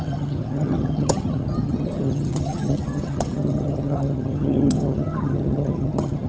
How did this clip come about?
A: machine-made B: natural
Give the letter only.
A